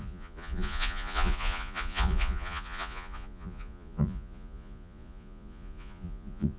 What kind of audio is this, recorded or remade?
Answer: remade